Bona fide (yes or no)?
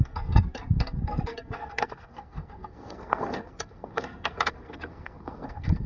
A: no